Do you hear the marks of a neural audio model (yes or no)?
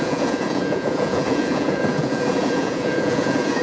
yes